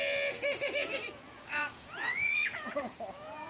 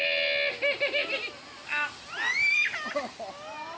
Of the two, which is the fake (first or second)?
first